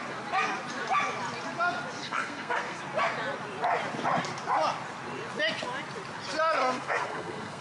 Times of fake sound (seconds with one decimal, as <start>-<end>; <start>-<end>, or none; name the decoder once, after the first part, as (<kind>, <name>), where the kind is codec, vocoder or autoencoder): 2.0-2.8 (codec, SNAC); 6.6-7.6